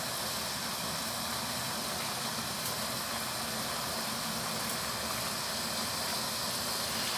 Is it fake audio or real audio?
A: real